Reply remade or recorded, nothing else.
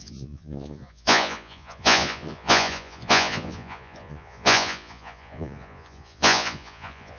remade